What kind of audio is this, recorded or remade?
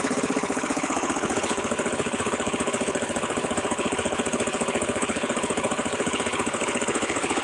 remade